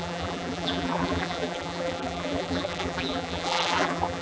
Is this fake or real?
fake